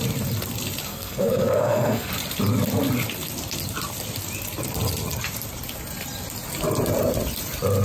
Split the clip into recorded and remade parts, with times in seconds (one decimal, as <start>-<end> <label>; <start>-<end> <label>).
0.0-0.9 recorded; 0.9-2.1 remade; 2.1-7.8 recorded